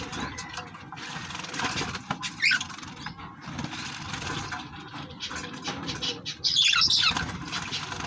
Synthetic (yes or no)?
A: no